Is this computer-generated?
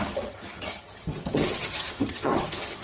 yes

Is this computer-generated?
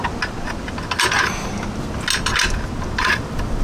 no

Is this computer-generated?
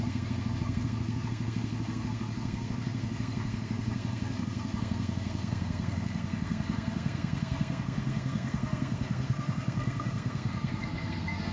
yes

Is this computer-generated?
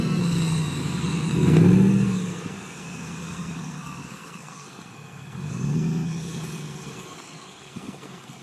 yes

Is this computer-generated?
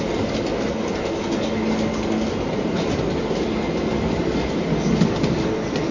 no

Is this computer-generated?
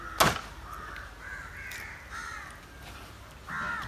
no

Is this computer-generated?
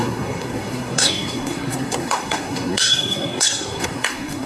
yes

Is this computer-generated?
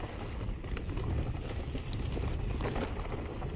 no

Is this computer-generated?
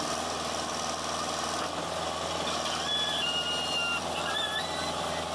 no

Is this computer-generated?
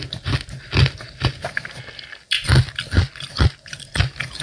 no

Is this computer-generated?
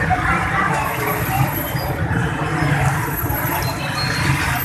yes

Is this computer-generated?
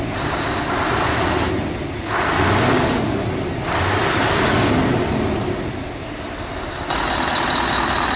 no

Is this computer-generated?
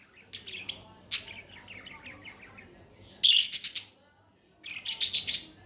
no